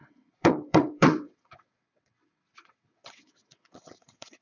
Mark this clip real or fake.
fake